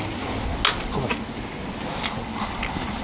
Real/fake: real